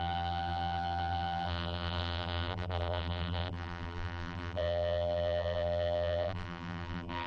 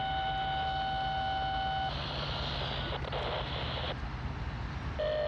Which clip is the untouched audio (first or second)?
second